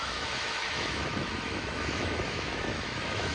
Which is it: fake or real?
fake